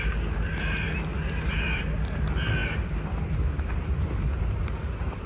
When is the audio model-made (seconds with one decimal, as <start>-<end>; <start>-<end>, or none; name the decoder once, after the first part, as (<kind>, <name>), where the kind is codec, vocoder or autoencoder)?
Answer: none